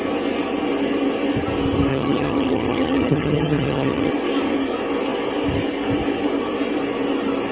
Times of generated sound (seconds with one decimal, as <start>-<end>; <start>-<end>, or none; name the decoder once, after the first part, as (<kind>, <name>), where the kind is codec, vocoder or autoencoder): 1.9-4.1 (vocoder, HiFi-GAN)